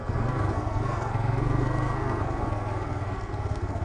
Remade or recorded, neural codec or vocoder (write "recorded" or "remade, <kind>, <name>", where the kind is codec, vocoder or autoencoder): remade, codec, SNAC